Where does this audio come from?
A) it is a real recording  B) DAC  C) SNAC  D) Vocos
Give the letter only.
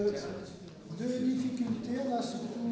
A